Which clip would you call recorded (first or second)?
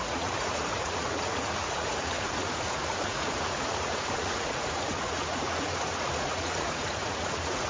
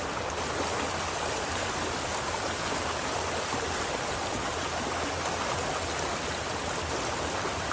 second